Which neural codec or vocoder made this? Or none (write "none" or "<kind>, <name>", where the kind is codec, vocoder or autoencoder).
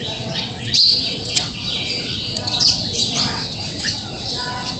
vocoder, WaveNeXt